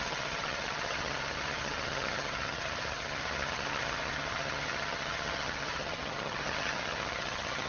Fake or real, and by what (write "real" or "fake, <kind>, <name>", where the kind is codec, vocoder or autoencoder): fake, vocoder, HiFi-GAN